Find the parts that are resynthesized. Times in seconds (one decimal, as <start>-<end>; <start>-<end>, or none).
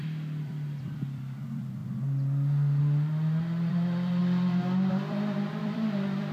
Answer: 0.0-1.8; 2.8-4.2; 4.9-6.3